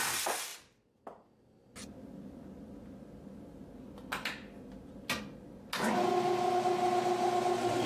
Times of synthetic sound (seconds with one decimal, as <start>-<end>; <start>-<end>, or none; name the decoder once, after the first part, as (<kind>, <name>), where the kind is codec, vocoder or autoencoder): none